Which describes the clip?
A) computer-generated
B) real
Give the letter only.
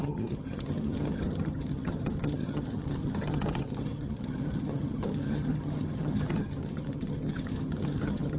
A